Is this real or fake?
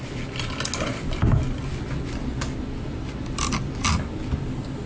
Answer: real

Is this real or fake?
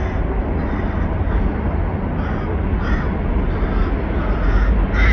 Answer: real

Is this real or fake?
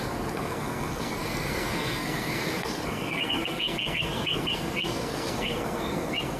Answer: fake